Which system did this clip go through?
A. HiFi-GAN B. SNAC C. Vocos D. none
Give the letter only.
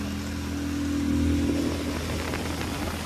D